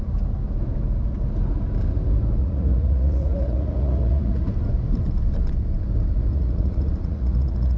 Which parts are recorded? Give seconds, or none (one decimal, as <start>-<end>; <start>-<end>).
0.0-2.4; 4.4-6.3